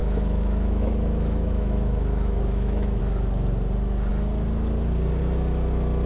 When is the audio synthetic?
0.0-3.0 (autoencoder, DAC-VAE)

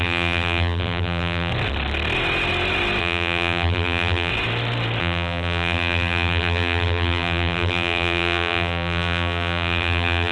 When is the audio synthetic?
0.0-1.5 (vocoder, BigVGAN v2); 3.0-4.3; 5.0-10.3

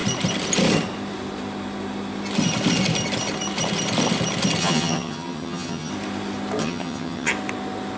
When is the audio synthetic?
4.6-5.9 (vocoder, HiFi-GAN); 6.6-7.3

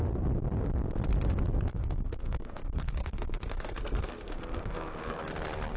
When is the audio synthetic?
1.7-5.2 (codec, SNAC)

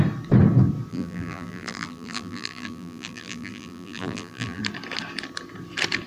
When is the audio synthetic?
0.9-4.6 (vocoder, BigVGAN v2)